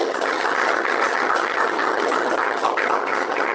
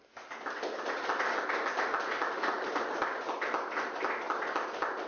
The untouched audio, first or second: second